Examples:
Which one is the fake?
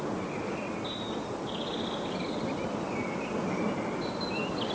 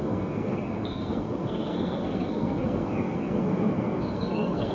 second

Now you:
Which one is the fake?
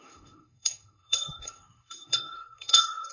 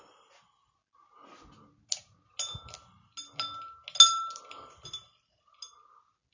first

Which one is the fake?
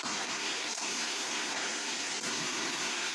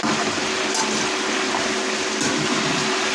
first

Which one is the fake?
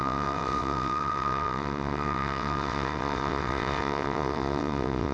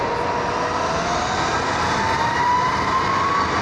first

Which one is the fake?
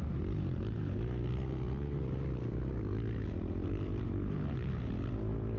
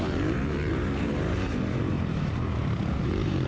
second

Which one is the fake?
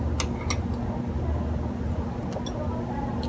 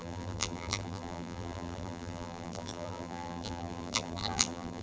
second